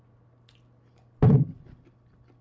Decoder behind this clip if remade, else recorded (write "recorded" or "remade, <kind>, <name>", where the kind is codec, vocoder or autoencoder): recorded